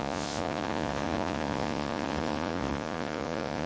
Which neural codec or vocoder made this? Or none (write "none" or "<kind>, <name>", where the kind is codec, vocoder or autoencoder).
vocoder, Vocos